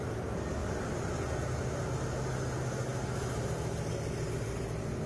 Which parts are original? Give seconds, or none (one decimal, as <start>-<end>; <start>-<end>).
0.0-5.1